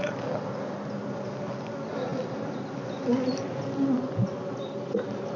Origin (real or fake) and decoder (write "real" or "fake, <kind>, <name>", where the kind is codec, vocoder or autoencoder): real